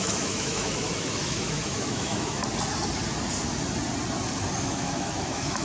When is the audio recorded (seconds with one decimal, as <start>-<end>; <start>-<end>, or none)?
2.4-4.6

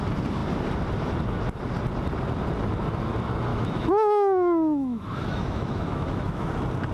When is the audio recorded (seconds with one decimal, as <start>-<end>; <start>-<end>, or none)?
0.0-3.5; 6.5-6.9

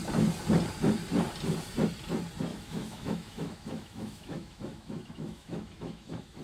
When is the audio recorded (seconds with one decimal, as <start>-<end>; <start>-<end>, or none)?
0.0-2.5

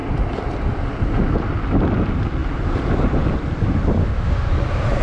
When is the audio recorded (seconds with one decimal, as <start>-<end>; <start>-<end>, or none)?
0.0-4.0; 4.5-5.0

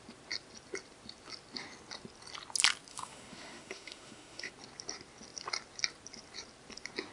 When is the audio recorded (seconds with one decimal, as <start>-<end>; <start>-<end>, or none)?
0.0-2.9; 4.5-7.1